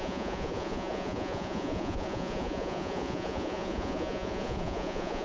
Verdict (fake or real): fake